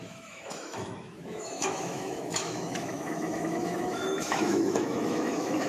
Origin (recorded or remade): remade